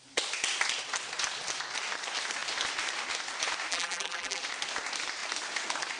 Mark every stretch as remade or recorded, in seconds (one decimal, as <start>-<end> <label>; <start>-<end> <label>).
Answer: 0.0-3.7 recorded; 3.7-4.4 remade; 4.4-6.0 recorded